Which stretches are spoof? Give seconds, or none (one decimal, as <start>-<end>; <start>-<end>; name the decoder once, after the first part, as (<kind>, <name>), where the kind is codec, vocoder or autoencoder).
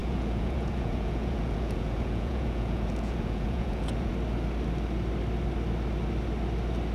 0.0-4.1 (vocoder, Vocos)